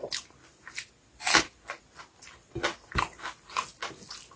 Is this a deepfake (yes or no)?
no